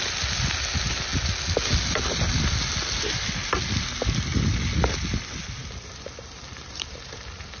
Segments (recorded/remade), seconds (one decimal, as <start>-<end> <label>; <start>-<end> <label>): 0.0-7.6 recorded